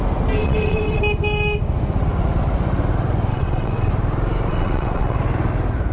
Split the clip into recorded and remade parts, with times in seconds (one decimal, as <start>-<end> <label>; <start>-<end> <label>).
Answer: 0.0-0.4 recorded; 0.4-1.0 remade; 1.0-3.3 recorded; 3.3-3.9 remade; 3.9-4.5 recorded; 4.5-5.2 remade; 5.2-5.9 recorded